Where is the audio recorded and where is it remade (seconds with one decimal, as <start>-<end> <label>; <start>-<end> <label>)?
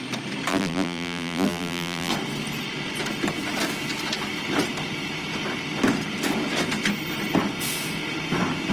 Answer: 0.0-0.5 recorded; 0.5-2.1 remade; 2.1-8.7 recorded